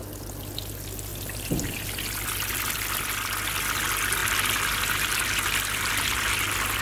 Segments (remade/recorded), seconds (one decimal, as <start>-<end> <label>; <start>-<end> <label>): 0.0-1.1 recorded; 1.1-2.9 remade; 2.9-4.2 recorded; 4.2-5.9 remade; 5.9-6.8 recorded